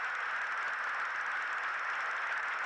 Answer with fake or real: real